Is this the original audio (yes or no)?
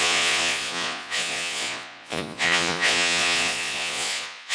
no